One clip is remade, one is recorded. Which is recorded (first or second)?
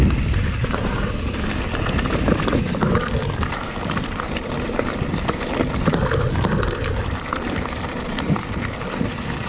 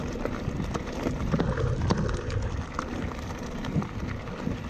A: second